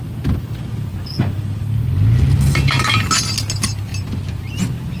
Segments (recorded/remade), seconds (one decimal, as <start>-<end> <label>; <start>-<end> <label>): 0.0-3.9 recorded; 3.9-4.4 remade; 4.4-5.0 recorded